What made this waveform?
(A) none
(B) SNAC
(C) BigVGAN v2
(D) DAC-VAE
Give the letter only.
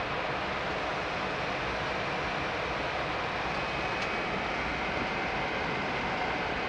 A